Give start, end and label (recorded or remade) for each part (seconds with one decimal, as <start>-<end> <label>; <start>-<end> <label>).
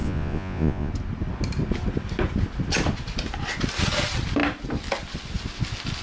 0.0-0.9 remade; 0.9-6.0 recorded